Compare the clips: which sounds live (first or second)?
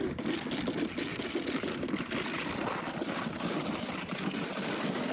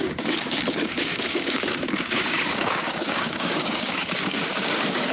first